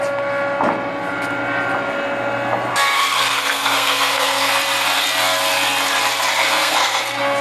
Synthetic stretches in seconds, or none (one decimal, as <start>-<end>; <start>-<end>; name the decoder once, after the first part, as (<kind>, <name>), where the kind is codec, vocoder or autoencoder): 2.7-4.5 (codec, SNAC); 6.4-7.4